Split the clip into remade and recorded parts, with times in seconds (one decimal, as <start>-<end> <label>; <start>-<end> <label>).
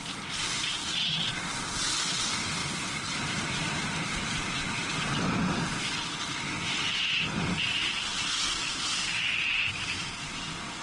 0.0-2.6 recorded; 2.6-4.7 remade; 4.7-10.8 recorded